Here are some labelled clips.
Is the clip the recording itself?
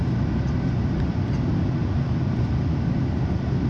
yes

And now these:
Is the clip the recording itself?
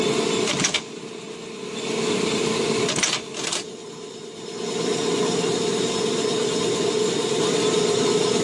no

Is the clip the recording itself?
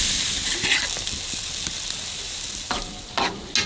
yes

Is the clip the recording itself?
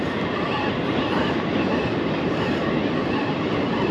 no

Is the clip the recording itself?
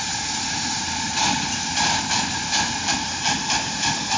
no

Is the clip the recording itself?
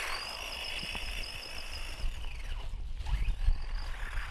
yes